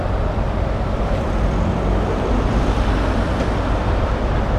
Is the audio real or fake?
fake